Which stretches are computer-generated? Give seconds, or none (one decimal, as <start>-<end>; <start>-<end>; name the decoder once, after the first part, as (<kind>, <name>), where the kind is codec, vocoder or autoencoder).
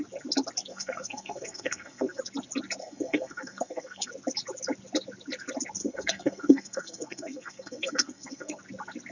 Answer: 0.7-2.2 (codec, SNAC); 2.8-4.1; 5.8-8.6